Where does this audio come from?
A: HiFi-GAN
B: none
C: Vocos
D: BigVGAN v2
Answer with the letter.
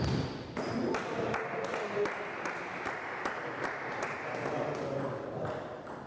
B